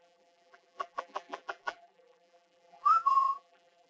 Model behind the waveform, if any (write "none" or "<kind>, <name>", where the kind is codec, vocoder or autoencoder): vocoder, BigVGAN v2